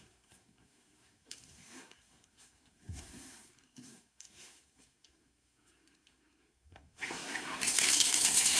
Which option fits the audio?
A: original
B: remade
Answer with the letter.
B